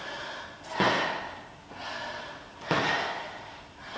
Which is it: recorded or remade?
recorded